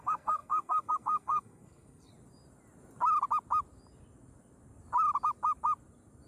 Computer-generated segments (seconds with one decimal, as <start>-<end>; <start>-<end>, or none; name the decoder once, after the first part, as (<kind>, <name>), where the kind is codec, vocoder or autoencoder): 0.0-2.1 (codec, SNAC)

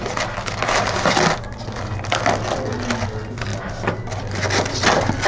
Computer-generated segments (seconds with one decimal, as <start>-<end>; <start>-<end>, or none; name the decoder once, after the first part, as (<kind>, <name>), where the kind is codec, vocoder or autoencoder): none

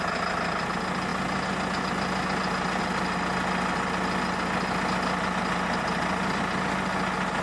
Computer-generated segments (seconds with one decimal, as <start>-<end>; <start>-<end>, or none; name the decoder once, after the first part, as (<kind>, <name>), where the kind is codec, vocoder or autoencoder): none

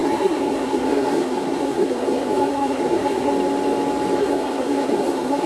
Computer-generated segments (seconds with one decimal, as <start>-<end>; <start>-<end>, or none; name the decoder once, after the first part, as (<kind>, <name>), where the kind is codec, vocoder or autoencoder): 0.0-3.3 (codec, SNAC); 4.2-5.5

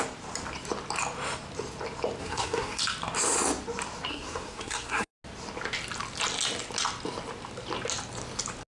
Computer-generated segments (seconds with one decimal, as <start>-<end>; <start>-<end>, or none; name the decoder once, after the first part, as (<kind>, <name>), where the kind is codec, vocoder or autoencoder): 2.2-2.8 (codec, SNAC); 4.1-5.1

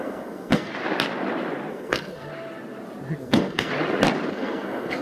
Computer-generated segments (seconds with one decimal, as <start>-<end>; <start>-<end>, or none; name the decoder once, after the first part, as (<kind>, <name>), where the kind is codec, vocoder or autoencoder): 0.0-0.7 (codec, SNAC); 1.7-2.3; 3.2-3.7; 4.3-5.0

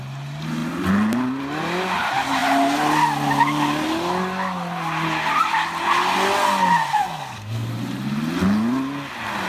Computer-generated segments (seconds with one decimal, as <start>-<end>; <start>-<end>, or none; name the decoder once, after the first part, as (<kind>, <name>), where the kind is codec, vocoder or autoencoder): 6.9-7.7 (codec, SNAC)